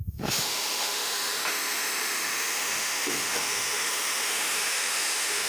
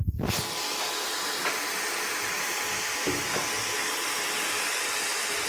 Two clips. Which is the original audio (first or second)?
second